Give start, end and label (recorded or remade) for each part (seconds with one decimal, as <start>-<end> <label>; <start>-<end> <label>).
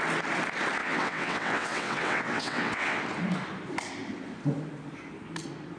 0.0-0.8 recorded; 0.8-3.0 remade; 3.0-5.8 recorded